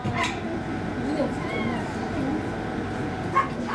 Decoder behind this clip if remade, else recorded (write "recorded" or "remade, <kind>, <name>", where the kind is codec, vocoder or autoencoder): recorded